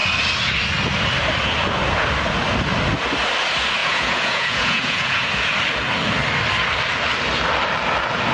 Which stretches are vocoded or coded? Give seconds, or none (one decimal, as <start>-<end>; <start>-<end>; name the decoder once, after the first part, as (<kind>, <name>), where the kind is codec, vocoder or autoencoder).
3.8-5.3 (vocoder, Vocos)